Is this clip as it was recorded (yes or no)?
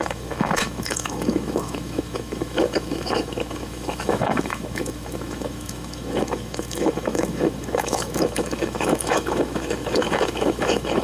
no